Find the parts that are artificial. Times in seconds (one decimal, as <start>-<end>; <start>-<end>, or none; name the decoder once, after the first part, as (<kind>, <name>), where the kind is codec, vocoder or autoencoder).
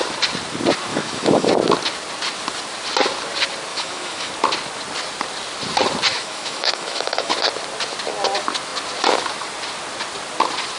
0.9-1.5 (autoencoder, DAC-VAE); 3.7-4.3; 6.1-7.3